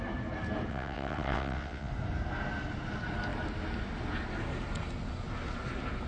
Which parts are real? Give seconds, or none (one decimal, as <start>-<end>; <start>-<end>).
0.0-0.7; 1.9-6.1